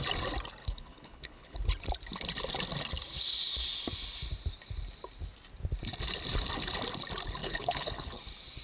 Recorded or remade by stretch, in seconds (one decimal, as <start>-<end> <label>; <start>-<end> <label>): 0.0-0.6 recorded; 0.6-1.6 remade; 1.6-7.4 recorded; 7.4-8.2 remade; 8.2-8.6 recorded